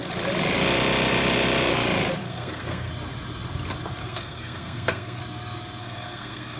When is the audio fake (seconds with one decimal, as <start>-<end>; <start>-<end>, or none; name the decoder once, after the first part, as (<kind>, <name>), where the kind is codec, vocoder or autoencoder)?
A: 2.2-2.9 (codec, SNAC); 4.0-5.2; 5.8-6.6